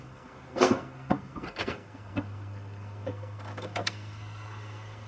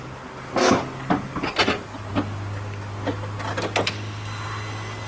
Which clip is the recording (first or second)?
second